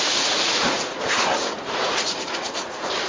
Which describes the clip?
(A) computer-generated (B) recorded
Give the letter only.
A